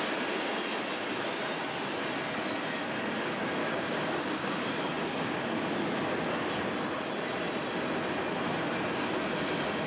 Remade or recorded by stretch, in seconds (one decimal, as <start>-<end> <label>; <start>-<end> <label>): 0.0-3.6 recorded; 3.6-5.7 remade; 5.7-9.9 recorded